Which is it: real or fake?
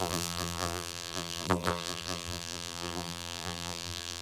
fake